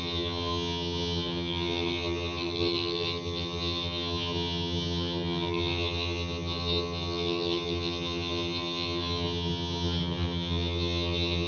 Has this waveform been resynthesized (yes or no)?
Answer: yes